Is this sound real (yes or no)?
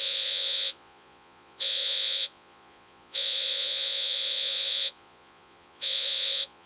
no